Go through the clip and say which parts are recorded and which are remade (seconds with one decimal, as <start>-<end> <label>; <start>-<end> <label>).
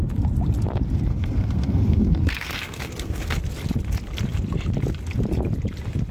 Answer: 0.0-1.1 recorded; 1.1-3.4 remade; 3.4-6.1 recorded